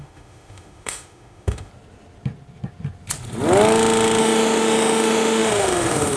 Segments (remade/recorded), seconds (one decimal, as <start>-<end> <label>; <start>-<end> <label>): 0.0-1.7 remade; 1.7-4.2 recorded; 4.2-6.2 remade